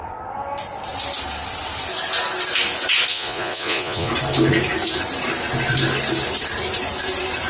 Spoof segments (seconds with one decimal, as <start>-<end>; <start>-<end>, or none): 3.1-4.1